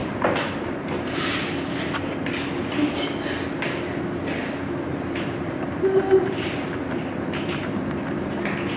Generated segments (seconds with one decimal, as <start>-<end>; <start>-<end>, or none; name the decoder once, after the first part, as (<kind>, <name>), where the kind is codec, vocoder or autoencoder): 0.0-1.4 (vocoder, BigVGAN v2); 4.9-8.4

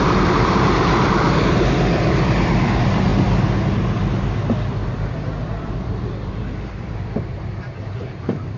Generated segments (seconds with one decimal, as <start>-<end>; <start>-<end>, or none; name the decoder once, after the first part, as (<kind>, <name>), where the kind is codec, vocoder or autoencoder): 0.0-3.1 (vocoder, BigVGAN v2); 5.6-8.6